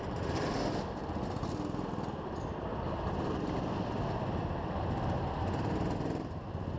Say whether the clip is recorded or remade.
recorded